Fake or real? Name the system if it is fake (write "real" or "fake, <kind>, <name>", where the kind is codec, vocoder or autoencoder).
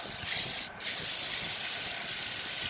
real